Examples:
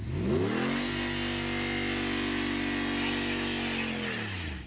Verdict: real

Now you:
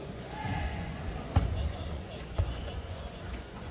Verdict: fake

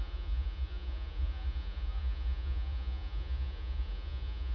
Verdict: fake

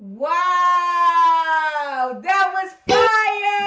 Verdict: real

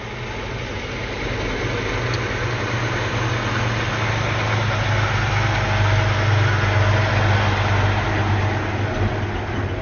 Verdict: real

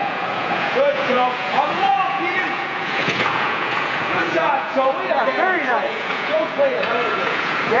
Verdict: fake